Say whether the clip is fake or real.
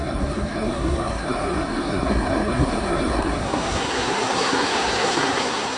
fake